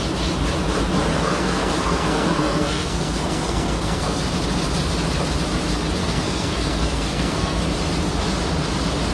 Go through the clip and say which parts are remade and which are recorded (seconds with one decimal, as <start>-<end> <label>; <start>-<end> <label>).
0.0-1.1 recorded; 1.1-4.2 remade; 4.2-6.0 recorded; 6.0-7.6 remade; 7.6-9.1 recorded